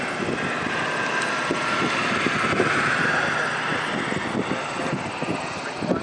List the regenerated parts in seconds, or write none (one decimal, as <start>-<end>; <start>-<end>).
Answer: none